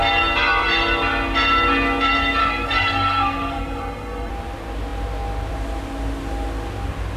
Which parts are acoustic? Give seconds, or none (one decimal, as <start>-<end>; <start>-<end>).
0.0-2.4; 4.3-7.2